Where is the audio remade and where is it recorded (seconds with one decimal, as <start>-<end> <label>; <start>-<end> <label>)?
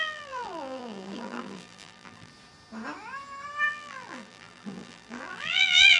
0.0-2.3 remade; 2.3-3.7 recorded; 3.7-6.0 remade